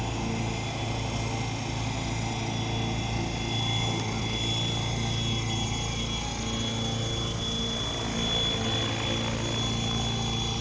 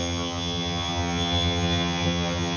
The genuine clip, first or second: first